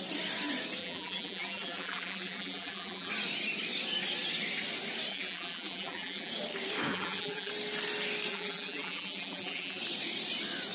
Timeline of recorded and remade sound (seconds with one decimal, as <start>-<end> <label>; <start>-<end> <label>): 0.0-0.8 recorded; 0.8-3.1 remade; 3.1-5.1 recorded; 5.1-6.3 remade; 6.3-6.9 recorded; 6.9-7.5 remade; 7.5-8.3 recorded; 8.3-9.8 remade; 9.8-10.7 recorded